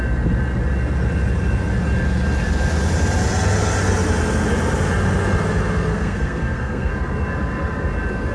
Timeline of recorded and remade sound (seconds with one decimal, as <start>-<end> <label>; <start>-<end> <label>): 0.0-5.9 recorded; 5.9-6.9 remade; 6.9-8.3 recorded